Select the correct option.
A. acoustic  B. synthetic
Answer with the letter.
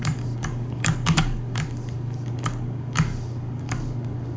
B